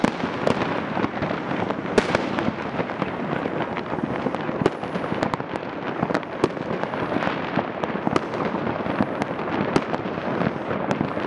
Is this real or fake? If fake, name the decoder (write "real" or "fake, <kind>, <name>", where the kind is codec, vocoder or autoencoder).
real